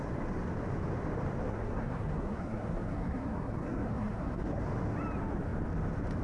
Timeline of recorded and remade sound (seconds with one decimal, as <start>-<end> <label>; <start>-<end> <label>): 0.0-1.5 recorded; 1.5-4.6 remade; 4.6-6.2 recorded